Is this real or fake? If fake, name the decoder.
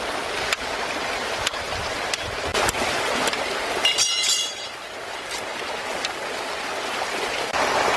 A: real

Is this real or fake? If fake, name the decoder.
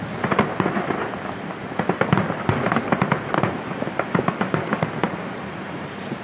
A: real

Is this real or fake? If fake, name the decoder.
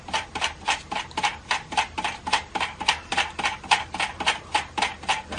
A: real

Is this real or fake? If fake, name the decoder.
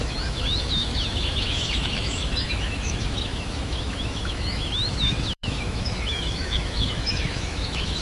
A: fake, autoencoder, DAC-VAE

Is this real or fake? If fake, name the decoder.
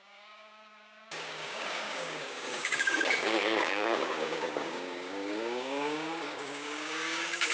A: fake, codec, DAC